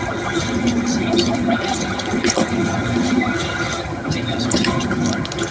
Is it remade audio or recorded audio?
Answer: remade